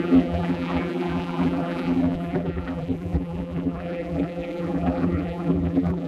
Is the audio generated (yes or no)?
yes